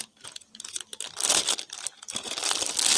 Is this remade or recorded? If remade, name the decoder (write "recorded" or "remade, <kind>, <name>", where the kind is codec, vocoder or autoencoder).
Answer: recorded